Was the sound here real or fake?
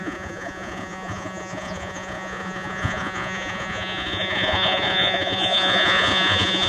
fake